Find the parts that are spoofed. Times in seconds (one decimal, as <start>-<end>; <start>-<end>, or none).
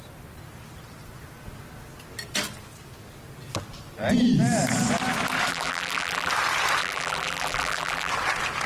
5.5-6.3; 6.8-8.1